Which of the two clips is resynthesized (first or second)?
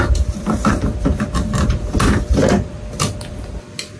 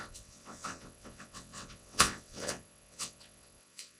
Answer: second